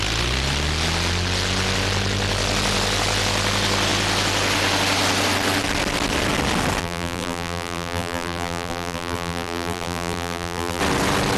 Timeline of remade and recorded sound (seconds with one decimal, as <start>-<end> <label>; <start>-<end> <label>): 0.0-6.8 recorded; 6.8-10.8 remade; 10.8-11.4 recorded

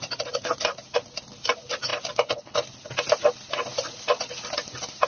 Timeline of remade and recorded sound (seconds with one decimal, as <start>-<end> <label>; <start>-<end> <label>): 0.0-5.1 recorded

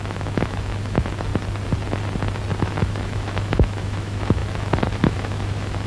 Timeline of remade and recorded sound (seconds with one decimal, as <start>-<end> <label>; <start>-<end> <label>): 0.0-1.3 remade; 1.3-2.6 recorded; 2.6-5.9 remade

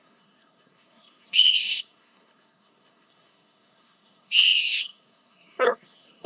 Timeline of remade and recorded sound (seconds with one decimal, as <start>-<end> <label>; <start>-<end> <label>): 0.0-6.3 remade

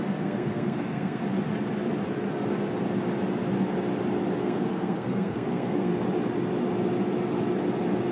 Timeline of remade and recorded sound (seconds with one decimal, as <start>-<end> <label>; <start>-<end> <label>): 0.0-1.2 remade; 1.2-4.4 recorded; 4.4-5.9 remade; 5.9-8.1 recorded

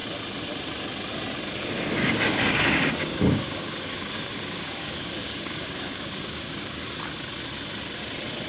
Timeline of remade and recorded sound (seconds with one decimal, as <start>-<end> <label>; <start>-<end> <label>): 0.0-2.0 recorded; 2.0-7.0 remade; 7.0-8.5 recorded